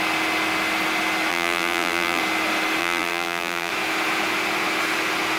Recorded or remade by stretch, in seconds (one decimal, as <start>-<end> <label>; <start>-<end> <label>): 0.0-1.3 recorded; 1.3-2.2 remade; 2.2-2.8 recorded; 2.8-3.7 remade; 3.7-5.4 recorded

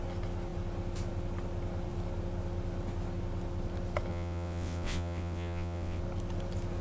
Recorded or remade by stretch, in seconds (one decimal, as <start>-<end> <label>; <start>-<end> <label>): 0.0-4.1 recorded; 4.1-6.0 remade; 6.0-6.8 recorded

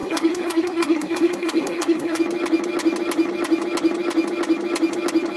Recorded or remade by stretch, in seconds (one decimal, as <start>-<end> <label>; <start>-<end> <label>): 0.0-2.2 remade; 2.2-5.4 recorded

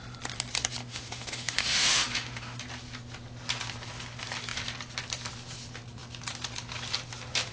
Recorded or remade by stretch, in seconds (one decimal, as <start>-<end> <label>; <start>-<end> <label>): 0.0-0.8 recorded; 0.8-2.6 remade; 2.6-7.5 recorded

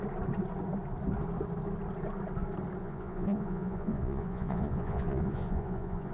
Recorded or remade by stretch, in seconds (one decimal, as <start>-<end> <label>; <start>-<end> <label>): 0.0-2.8 recorded; 2.8-6.1 remade

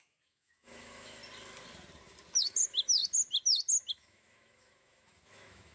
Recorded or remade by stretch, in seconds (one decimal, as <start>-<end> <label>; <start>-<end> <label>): 0.0-1.2 remade; 1.2-2.4 recorded; 2.4-3.0 remade; 3.0-3.9 recorded; 3.9-5.7 remade

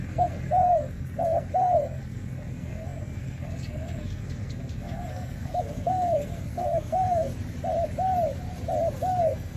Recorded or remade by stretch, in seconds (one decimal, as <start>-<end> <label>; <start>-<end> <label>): 0.0-7.3 remade; 7.3-9.2 recorded; 9.2-9.6 remade

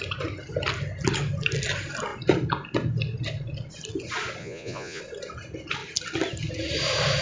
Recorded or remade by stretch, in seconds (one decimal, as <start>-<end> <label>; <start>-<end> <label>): 0.0-4.4 recorded; 4.4-5.0 remade; 5.0-7.2 recorded